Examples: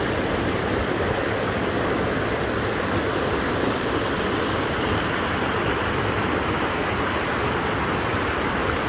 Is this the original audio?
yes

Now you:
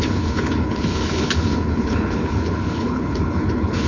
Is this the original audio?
no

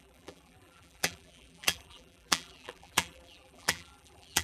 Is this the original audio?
no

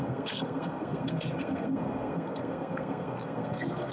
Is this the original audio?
no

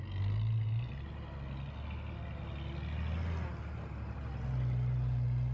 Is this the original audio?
yes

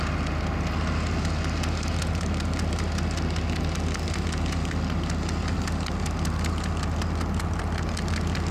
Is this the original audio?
yes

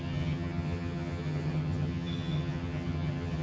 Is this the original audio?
no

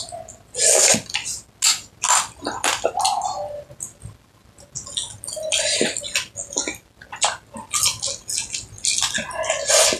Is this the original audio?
yes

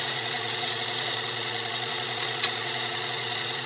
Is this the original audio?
no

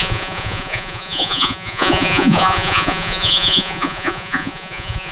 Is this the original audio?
no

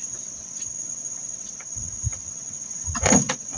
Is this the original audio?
no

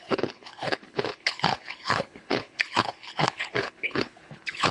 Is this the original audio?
no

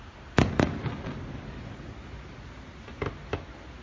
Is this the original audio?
yes